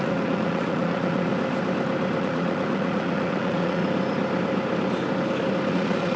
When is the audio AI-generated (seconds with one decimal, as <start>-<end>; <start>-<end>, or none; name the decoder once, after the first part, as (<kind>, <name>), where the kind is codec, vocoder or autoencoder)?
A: 0.0-1.3 (vocoder, Vocos); 2.2-3.8; 5.7-6.2